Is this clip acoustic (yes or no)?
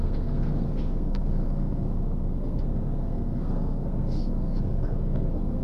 no